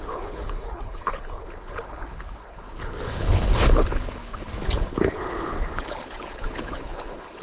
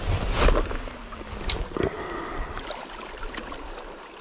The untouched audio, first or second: second